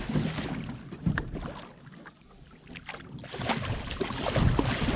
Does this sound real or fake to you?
real